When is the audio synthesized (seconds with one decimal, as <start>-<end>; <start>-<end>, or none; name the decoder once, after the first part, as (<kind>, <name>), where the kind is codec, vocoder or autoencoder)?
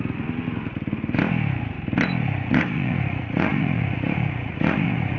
2.2-5.2 (vocoder, Vocos)